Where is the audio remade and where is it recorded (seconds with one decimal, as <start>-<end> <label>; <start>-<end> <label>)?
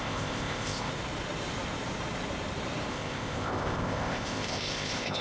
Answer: 0.0-0.9 remade; 0.9-2.9 recorded; 2.9-5.2 remade